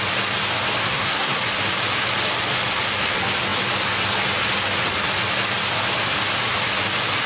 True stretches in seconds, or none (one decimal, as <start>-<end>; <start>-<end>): 0.0-0.9; 1.4-7.3